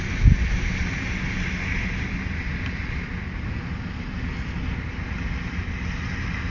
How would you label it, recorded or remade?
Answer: recorded